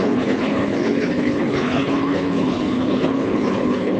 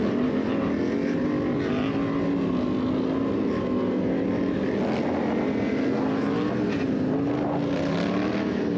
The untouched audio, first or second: second